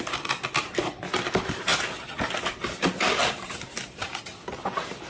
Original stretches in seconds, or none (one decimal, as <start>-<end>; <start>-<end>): 0.0-5.1